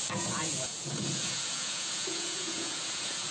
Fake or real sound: fake